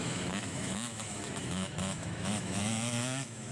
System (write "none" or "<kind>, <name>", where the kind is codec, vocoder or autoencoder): autoencoder, DAC-VAE